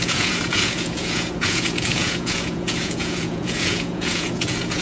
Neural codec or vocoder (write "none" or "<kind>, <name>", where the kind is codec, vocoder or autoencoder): vocoder, Vocos